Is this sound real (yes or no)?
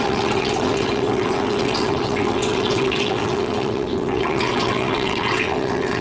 no